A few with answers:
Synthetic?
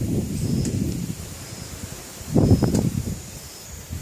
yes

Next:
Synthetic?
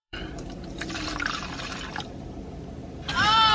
yes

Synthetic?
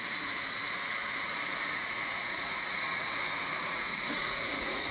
yes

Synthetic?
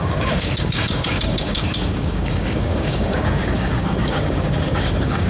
yes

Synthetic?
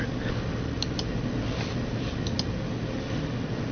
no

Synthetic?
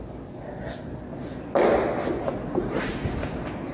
no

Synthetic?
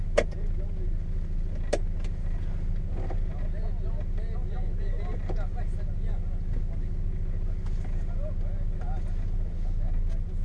no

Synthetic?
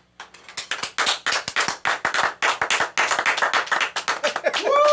no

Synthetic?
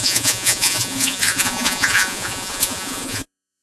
yes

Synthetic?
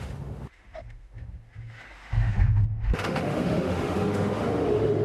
yes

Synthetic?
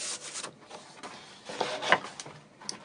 no